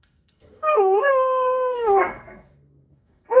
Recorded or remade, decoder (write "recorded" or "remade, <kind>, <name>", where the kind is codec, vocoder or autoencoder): remade, codec, SNAC